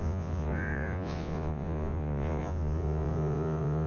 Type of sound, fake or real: fake